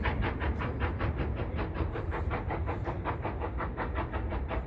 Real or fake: real